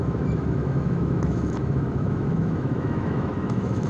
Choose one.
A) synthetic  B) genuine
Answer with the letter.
A